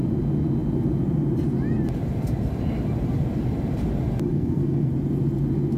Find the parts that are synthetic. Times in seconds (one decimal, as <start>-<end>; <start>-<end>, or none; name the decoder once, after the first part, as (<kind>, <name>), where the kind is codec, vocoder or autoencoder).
4.3-4.9 (codec, SNAC)